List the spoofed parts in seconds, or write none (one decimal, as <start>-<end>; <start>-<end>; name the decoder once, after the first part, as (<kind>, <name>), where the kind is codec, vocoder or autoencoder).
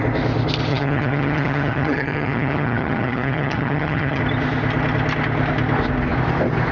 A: 0.7-4.2 (vocoder, HiFi-GAN)